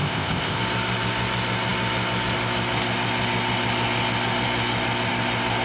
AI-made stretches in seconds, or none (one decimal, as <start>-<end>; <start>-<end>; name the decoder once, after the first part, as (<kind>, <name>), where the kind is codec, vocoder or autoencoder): 0.0-0.6 (codec, ZipCodec)